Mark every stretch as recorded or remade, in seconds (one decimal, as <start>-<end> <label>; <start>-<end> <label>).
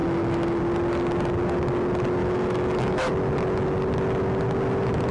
0.0-0.6 remade; 0.6-2.2 recorded; 2.2-3.1 remade; 3.1-5.1 recorded